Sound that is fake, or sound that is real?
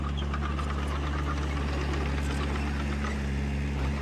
real